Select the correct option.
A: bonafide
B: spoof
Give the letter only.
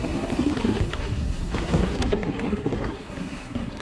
B